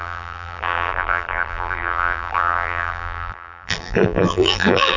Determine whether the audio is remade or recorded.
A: remade